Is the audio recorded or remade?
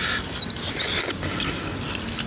recorded